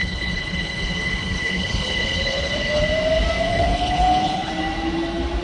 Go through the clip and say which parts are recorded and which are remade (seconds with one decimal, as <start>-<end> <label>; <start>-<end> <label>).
0.0-2.8 remade; 2.8-3.5 recorded; 3.5-4.5 remade; 4.5-5.4 recorded